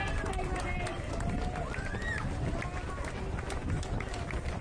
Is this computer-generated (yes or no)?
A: no